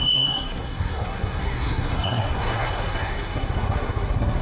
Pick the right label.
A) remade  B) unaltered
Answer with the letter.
A